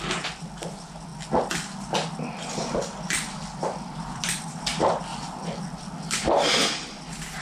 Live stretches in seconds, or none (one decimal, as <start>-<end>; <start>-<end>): 1.1-3.6; 5.1-6.1; 6.6-7.4